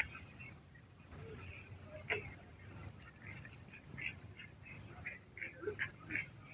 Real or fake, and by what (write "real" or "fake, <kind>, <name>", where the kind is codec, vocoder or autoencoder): real